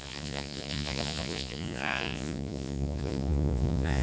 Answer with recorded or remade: remade